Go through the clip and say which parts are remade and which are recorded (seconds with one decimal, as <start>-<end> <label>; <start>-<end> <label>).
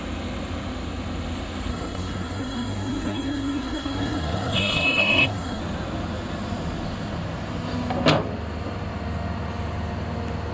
0.0-1.7 recorded; 1.7-5.6 remade; 5.6-10.5 recorded